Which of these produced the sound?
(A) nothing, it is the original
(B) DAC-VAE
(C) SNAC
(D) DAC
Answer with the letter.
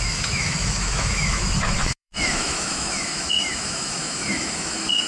B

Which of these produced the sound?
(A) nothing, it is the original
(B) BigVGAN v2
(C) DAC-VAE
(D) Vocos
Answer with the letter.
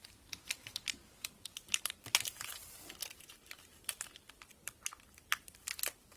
A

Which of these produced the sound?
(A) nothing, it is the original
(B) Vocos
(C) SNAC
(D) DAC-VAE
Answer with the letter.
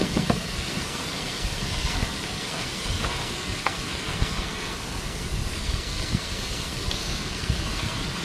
C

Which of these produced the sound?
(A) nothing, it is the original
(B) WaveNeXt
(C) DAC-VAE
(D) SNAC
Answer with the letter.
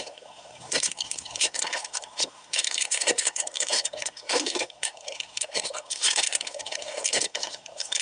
D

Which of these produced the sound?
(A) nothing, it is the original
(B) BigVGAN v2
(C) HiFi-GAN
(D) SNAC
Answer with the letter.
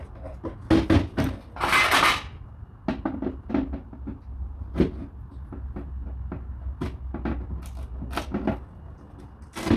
A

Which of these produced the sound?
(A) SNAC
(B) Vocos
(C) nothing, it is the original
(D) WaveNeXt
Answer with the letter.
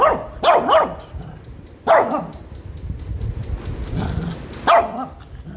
C